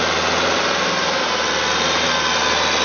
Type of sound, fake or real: real